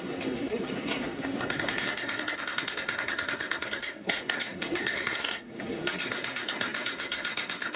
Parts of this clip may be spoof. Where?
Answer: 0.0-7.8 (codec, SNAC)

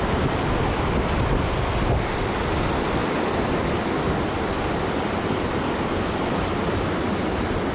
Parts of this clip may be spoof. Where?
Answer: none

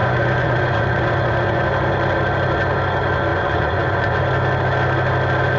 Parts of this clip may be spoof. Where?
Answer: 0.0-1.6 (vocoder, Vocos); 3.3-4.2

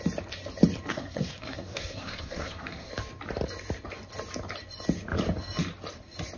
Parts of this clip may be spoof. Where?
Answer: 0.9-2.9 (codec, SNAC)

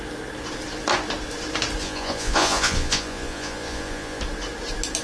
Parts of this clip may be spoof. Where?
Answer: 1.8-4.2 (vocoder, Vocos)

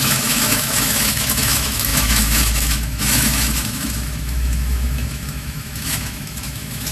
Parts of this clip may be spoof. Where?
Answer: 0.0-6.9 (autoencoder, DAC-VAE)

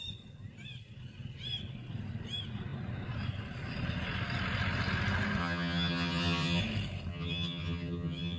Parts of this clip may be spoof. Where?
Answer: 5.4-6.6 (vocoder, HiFi-GAN); 7.1-8.4